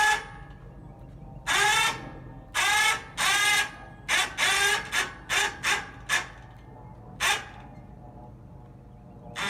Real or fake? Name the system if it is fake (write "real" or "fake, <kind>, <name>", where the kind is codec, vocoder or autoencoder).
real